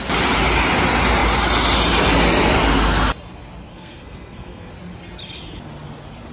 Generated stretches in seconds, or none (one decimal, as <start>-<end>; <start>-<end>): 3.7-4.7